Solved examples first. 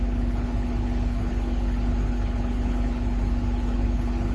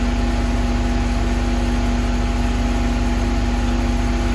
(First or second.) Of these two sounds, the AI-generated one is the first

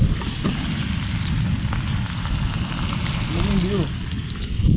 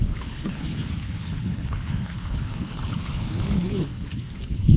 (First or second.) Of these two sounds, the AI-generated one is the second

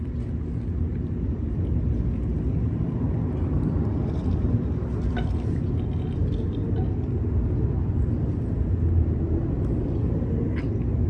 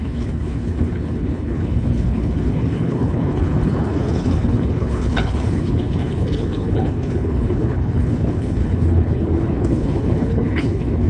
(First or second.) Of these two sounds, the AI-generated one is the second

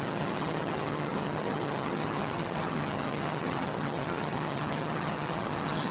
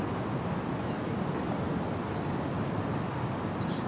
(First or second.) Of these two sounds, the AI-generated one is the first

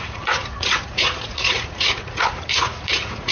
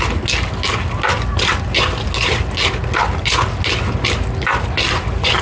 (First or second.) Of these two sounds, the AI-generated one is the first